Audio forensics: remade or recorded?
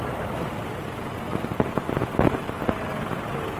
recorded